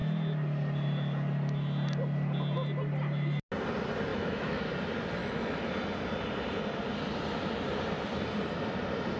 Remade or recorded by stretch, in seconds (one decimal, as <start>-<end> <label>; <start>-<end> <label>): 0.0-4.1 recorded; 4.1-4.7 remade; 4.7-5.2 recorded; 5.2-5.7 remade; 5.7-9.2 recorded